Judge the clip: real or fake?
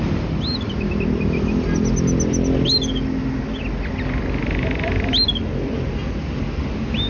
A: real